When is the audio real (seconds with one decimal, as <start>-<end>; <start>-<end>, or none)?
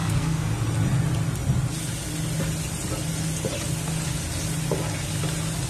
0.5-5.7